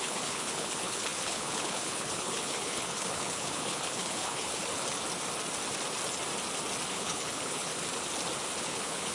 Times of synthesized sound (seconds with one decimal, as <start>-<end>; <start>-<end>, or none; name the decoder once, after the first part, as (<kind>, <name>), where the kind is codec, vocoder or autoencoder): 0.0-4.6 (codec, HILCodec); 6.9-7.7; 8.6-9.1